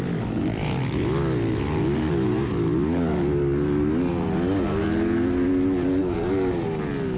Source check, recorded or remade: recorded